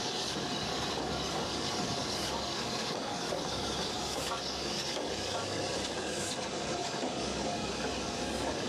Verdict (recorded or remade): remade